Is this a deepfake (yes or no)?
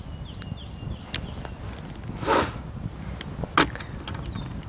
no